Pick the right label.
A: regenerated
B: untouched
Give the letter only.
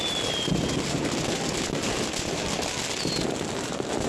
B